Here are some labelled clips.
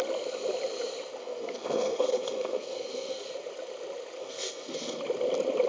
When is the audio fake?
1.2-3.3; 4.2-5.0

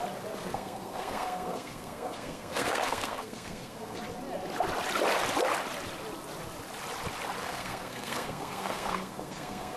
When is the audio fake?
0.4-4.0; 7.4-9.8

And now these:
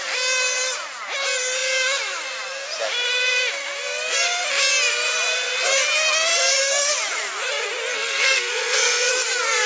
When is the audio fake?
7.9-9.1

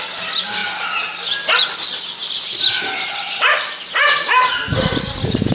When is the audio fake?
none

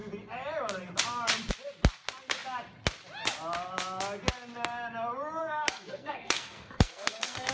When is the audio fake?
5.4-7.5

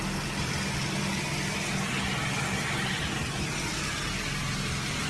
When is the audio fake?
none

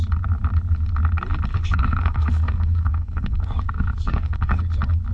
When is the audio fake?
1.5-4.6